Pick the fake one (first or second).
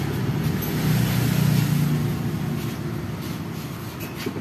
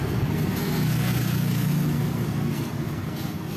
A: second